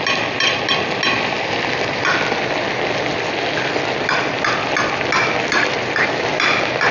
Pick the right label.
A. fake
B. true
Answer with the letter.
B